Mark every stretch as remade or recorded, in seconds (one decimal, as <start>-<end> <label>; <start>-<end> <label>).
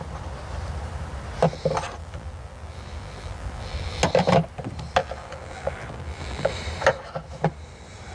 0.0-2.0 recorded; 2.0-4.0 remade; 4.0-5.0 recorded; 5.0-6.5 remade; 6.5-8.1 recorded